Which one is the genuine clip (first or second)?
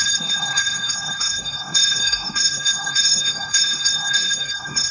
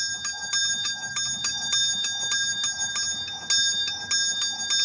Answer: second